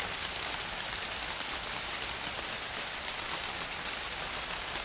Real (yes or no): yes